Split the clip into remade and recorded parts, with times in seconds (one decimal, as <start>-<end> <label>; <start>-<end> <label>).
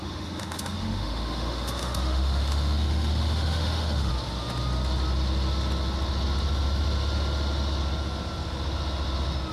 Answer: 0.0-4.1 remade; 4.1-9.5 recorded